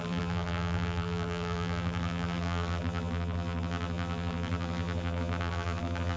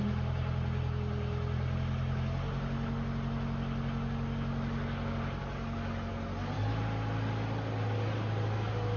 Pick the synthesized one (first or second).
first